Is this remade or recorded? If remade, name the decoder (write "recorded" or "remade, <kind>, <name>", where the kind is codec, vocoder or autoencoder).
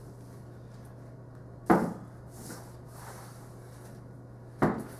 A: recorded